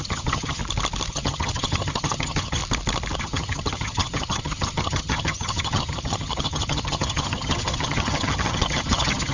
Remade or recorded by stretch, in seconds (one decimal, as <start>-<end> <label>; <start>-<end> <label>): 0.0-0.6 remade; 0.6-1.1 recorded; 1.1-2.6 remade; 2.6-3.2 recorded; 3.2-9.3 remade